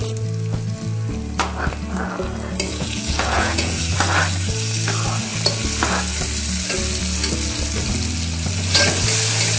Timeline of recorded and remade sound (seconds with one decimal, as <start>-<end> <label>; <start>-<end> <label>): 0.0-2.7 recorded; 2.7-3.8 remade; 3.8-9.6 recorded